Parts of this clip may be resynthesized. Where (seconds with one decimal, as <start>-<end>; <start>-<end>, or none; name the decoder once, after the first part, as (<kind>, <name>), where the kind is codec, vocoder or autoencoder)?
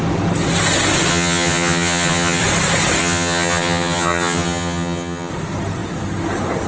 1.1-2.4 (vocoder, HiFi-GAN); 3.0-5.3